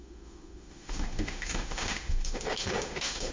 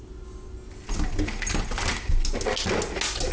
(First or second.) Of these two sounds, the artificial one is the first